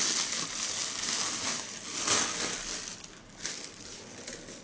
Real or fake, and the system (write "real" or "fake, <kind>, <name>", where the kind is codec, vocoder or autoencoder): real